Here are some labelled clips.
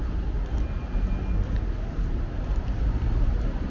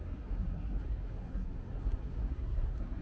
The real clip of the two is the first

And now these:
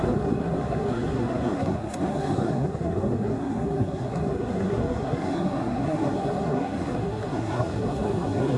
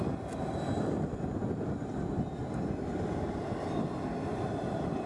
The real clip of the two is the second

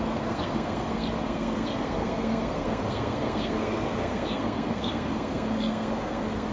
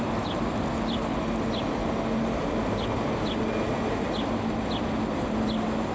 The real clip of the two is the second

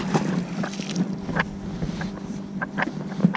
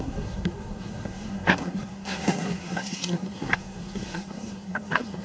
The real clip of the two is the first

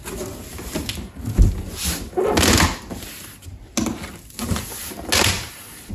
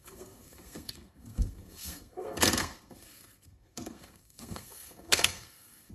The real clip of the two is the first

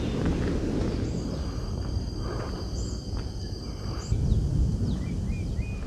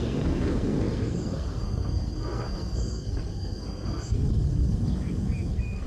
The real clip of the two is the first